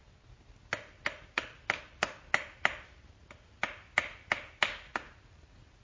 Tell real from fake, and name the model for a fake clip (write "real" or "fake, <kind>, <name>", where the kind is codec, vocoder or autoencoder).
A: real